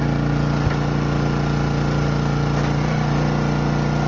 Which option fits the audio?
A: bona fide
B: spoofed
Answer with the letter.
A